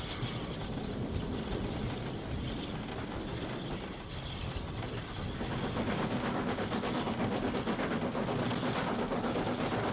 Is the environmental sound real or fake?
real